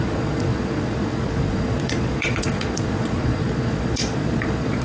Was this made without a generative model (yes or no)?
no